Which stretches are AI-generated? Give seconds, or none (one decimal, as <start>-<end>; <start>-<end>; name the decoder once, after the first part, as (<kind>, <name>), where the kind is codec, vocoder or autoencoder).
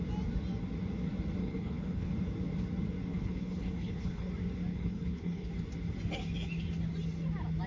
1.4-2.1 (codec, HILCodec); 3.1-4.3; 4.7-5.5